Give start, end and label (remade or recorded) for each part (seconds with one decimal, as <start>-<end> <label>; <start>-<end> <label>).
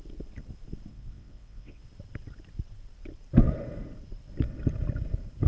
0.0-0.9 recorded; 0.9-1.8 remade; 1.8-5.5 recorded